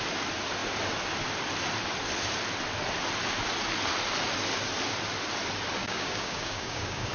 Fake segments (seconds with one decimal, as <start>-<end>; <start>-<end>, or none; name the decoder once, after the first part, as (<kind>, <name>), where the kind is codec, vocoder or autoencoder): 5.8-7.1 (codec, DAC)